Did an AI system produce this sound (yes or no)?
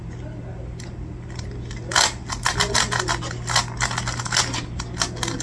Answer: no